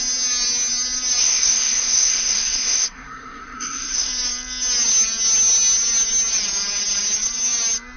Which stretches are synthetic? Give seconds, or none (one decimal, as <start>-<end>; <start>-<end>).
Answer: 1.2-4.1